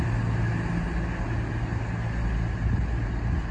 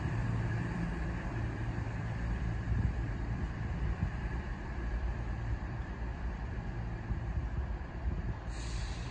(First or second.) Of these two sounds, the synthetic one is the second